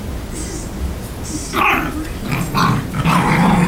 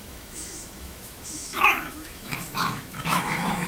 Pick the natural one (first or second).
first